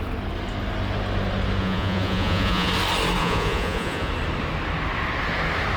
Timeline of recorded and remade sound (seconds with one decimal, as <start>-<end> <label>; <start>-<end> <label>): 0.0-1.6 recorded; 1.6-2.7 remade; 2.7-3.2 recorded; 3.2-4.1 remade; 4.1-5.8 recorded